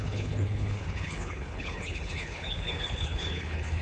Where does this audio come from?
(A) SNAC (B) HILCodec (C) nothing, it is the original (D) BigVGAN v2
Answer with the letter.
B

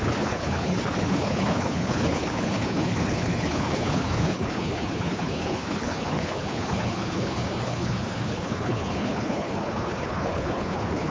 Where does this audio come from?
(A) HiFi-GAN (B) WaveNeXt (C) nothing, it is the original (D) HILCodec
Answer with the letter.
D